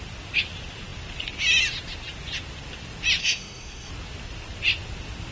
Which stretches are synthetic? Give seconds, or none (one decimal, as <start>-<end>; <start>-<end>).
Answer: 3.2-3.9